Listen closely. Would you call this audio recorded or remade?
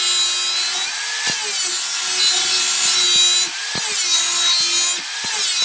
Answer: recorded